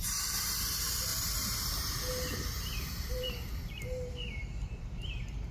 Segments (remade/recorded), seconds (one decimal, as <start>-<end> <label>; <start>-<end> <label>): 0.0-5.5 remade